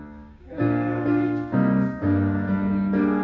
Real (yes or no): no